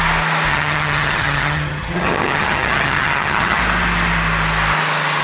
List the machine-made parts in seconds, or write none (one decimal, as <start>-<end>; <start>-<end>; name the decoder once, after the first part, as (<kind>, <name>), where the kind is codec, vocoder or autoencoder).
0.5-3.6 (vocoder, HiFi-GAN)